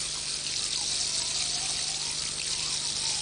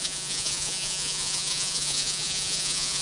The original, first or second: first